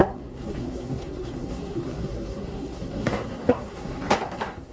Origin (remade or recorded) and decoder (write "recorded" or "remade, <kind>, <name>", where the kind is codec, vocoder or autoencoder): remade, codec, SNAC